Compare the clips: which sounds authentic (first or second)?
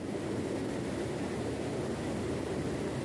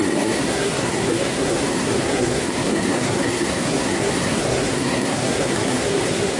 first